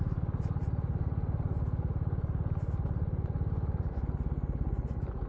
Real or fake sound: real